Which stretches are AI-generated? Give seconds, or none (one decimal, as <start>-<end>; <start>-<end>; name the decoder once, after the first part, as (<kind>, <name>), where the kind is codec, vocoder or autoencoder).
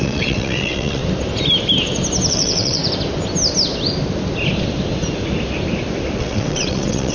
0.0-1.0 (vocoder, WaveNeXt); 2.3-2.8; 6.2-7.1